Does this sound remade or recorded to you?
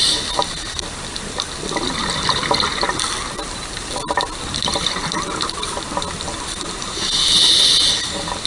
recorded